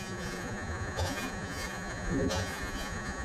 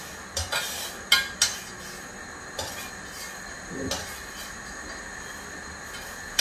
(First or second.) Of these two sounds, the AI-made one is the first